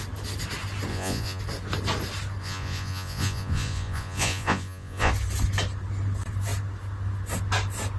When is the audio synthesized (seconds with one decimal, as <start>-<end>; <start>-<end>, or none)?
0.9-1.4; 2.4-5.1